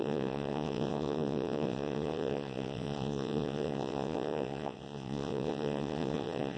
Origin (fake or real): fake